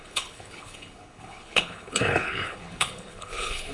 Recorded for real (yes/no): no